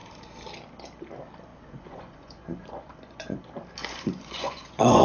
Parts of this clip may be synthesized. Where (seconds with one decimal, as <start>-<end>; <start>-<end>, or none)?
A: 1.5-3.4; 3.8-5.0